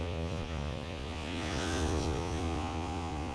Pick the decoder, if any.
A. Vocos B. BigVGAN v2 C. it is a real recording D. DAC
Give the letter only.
A